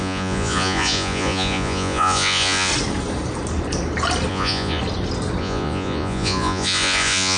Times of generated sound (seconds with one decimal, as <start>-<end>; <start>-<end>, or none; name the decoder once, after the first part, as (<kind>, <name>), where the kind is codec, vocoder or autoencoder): 0.0-2.7 (vocoder, Vocos); 4.3-4.8; 5.4-7.4